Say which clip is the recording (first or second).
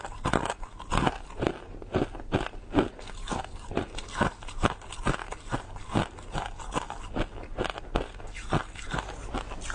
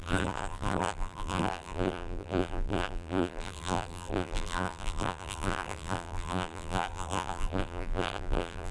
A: first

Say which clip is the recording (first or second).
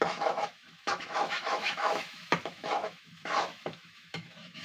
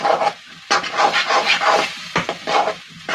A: second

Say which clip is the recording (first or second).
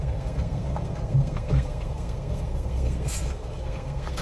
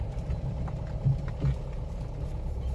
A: second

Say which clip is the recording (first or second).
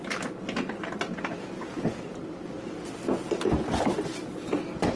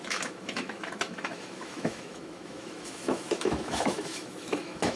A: first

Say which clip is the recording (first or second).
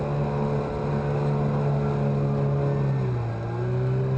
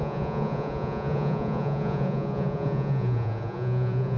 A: first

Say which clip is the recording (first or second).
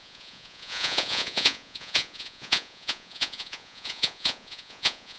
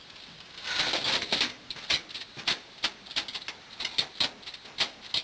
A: second